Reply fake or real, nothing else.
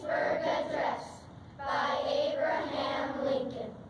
real